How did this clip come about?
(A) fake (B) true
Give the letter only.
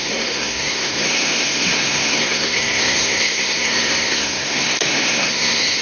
A